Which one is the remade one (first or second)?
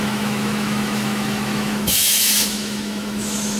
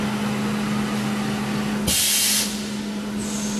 first